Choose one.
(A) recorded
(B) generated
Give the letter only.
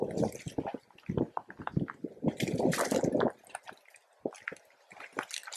A